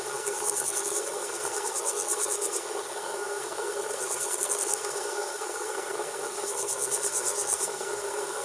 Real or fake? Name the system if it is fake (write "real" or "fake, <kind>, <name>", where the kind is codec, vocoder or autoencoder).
fake, codec, SNAC